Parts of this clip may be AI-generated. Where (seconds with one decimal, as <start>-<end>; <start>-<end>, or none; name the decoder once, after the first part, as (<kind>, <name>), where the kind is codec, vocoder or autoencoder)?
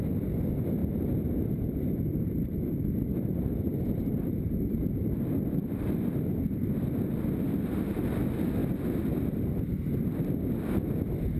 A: 0.8-4.8 (vocoder, BigVGAN v2); 5.6-7.2